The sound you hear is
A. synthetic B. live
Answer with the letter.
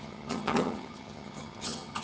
A